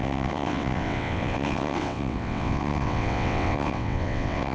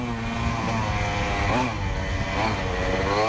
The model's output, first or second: first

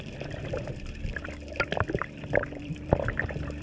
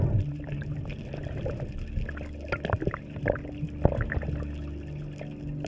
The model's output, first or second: first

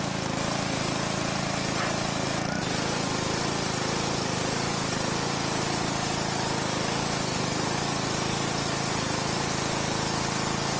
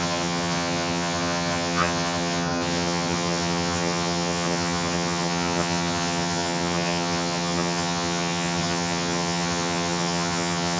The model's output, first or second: second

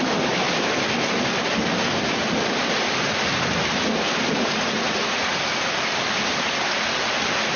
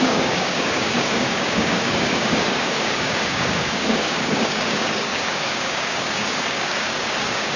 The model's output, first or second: second